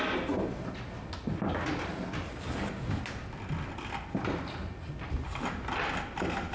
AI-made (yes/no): no